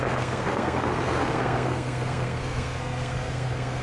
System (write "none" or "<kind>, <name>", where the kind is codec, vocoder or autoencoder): codec, SNAC